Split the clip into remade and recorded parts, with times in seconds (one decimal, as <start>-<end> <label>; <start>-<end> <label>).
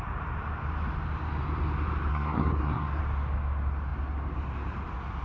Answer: 0.0-2.1 recorded; 2.1-3.0 remade; 3.0-5.2 recorded